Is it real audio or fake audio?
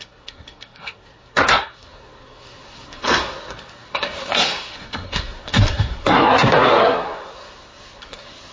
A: fake